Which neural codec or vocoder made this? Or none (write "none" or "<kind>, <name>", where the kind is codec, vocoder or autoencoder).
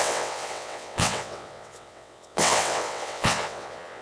vocoder, WaveNeXt